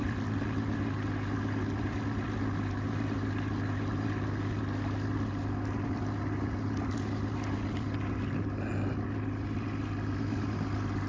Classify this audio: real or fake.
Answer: real